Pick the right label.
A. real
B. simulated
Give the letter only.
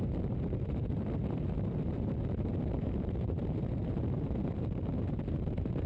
B